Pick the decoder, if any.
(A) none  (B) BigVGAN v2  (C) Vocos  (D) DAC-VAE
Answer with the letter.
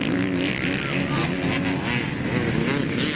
A